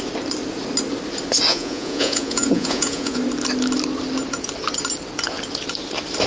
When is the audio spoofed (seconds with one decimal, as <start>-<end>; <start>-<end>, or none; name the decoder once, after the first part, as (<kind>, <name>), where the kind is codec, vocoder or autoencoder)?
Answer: 1.5-3.2 (vocoder, Vocos)

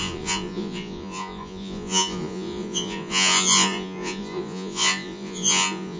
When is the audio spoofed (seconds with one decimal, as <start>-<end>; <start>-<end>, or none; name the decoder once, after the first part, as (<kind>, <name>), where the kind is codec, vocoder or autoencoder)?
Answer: 0.0-6.0 (vocoder, Vocos)

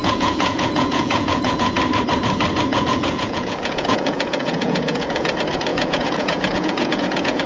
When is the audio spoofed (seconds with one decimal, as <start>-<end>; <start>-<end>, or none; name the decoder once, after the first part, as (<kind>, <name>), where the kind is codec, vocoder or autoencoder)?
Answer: 0.0-1.7 (vocoder, Vocos); 2.7-5.3; 5.7-7.5

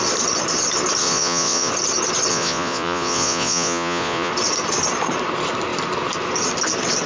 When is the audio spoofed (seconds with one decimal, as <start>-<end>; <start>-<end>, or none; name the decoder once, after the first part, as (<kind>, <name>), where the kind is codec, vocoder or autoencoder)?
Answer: 1.0-1.7 (vocoder, Vocos); 2.3-4.3

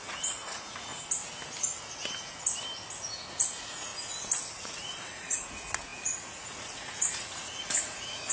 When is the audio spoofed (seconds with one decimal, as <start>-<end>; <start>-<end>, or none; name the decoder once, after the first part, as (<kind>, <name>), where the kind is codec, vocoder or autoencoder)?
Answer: 0.0-0.9 (vocoder, Vocos); 3.3-3.9; 4.5-8.3